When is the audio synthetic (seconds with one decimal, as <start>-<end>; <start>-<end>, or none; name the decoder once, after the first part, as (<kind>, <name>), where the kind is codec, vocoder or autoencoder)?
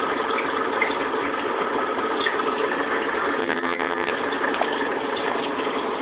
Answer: 3.4-4.1 (vocoder, HiFi-GAN)